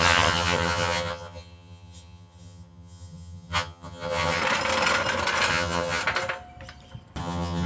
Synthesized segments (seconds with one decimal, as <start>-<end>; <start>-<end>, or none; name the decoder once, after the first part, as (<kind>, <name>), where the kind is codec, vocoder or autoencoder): 0.0-4.4 (vocoder, HiFi-GAN); 5.5-6.0; 7.2-7.7